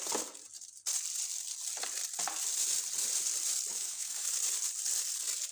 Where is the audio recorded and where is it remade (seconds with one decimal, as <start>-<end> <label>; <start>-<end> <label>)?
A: 0.0-3.7 recorded; 3.7-4.3 remade; 4.3-5.5 recorded